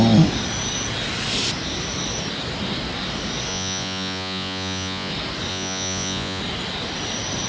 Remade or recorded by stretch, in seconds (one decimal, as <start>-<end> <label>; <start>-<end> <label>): 0.0-3.5 recorded; 3.5-5.1 remade; 5.1-5.5 recorded; 5.5-6.4 remade; 6.4-7.5 recorded